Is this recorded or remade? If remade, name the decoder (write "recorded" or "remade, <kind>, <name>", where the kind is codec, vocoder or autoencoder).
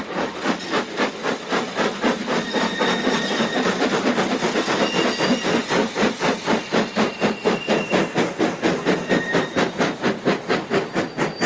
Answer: recorded